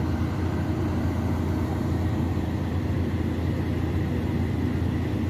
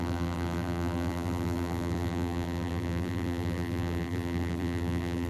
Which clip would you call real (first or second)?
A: first